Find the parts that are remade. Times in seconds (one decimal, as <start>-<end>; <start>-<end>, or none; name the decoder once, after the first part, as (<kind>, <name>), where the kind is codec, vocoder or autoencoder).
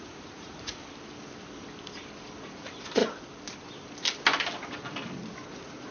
0.0-0.8 (vocoder, Vocos); 2.4-3.0; 5.5-5.9